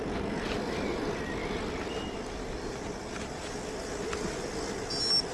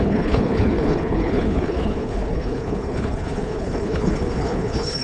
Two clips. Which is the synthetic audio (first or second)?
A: second